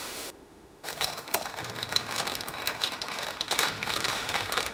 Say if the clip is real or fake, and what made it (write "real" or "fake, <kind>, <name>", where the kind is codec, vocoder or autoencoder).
fake, autoencoder, DAC-VAE